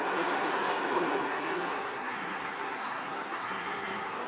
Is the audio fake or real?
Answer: fake